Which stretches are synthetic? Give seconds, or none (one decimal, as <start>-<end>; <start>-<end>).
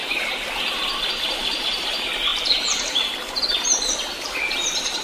1.1-5.0